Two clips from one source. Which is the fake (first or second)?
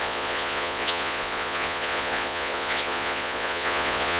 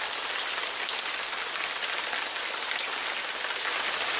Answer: first